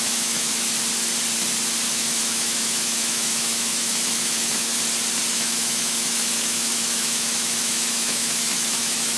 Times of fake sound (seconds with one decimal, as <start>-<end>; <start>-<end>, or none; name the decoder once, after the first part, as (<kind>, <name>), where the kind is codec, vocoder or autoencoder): 0.0-0.5 (autoencoder, DAC-VAE); 1.9-4.7; 5.3-9.2